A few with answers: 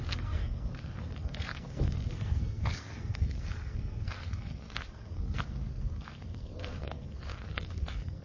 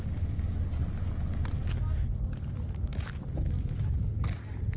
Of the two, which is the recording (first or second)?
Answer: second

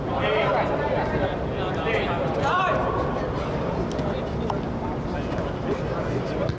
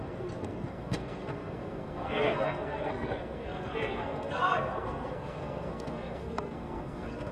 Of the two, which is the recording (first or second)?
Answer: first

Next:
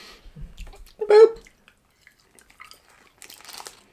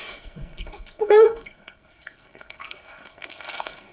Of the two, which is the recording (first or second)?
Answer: first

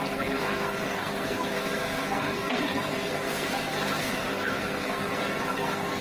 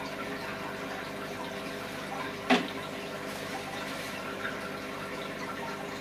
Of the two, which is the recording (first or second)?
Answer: second